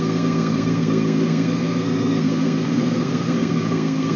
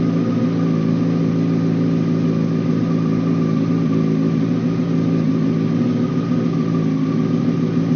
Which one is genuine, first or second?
second